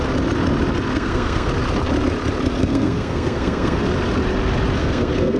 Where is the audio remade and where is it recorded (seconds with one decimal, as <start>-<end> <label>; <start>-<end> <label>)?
0.0-0.9 recorded; 0.9-1.5 remade; 1.5-2.6 recorded; 2.6-3.8 remade; 3.8-4.8 recorded; 4.8-5.4 remade